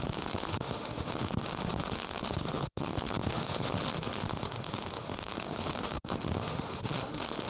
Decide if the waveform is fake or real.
fake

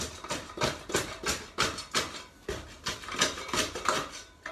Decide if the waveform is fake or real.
real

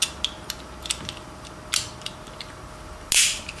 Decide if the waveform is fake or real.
real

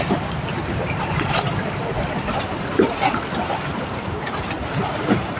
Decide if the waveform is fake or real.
fake